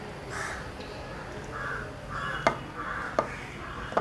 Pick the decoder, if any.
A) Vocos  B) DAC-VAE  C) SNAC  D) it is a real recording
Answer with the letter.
D